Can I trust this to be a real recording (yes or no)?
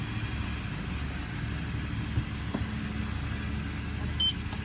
yes